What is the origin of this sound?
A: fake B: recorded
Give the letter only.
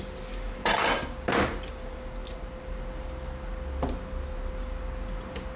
B